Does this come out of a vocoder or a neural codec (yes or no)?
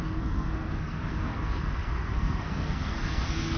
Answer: yes